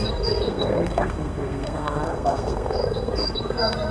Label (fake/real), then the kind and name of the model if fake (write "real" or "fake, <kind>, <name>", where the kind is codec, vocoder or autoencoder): fake, codec, SNAC